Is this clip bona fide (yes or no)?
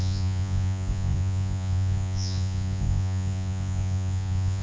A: no